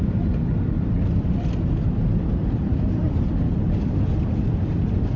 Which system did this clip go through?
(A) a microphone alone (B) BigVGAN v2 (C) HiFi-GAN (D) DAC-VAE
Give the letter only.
A